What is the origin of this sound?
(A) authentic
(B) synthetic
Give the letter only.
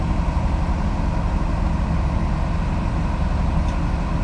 A